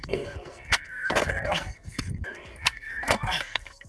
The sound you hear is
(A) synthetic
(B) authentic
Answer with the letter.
A